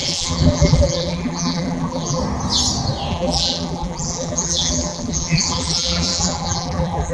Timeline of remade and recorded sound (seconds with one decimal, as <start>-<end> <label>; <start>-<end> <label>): 0.0-2.2 remade; 2.2-3.1 recorded; 3.1-7.1 remade